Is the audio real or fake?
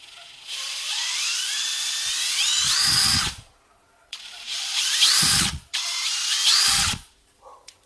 fake